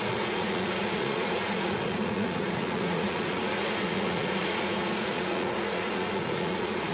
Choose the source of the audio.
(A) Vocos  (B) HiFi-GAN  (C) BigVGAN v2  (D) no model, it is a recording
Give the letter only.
A